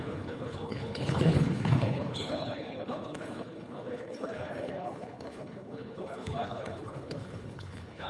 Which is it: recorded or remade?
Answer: remade